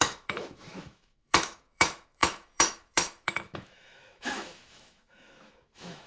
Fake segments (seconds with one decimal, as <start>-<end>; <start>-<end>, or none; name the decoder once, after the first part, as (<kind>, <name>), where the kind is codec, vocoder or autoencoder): 0.0-6.1 (autoencoder, DAC-VAE)